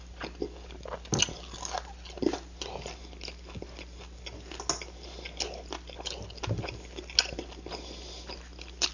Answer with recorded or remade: recorded